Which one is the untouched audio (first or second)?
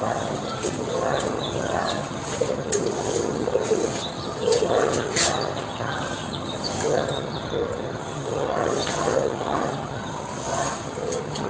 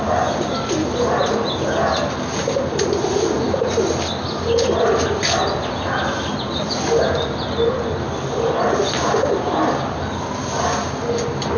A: second